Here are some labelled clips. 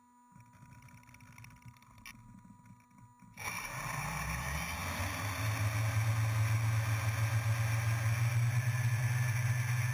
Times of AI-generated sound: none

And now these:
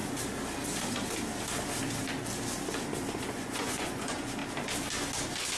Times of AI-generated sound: 3.2-4.4 (vocoder, Vocos)

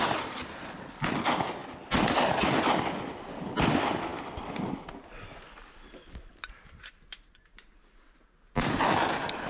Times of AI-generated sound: none

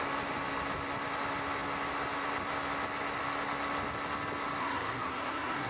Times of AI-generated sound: 4.6-5.7 (codec, SNAC)

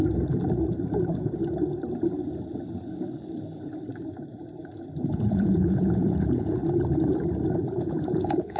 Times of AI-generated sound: 5.0-6.6 (vocoder, Vocos); 7.8-8.6

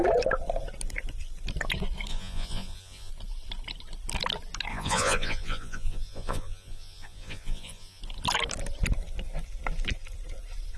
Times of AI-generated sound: 2.1-3.1 (vocoder, Vocos); 4.7-8.0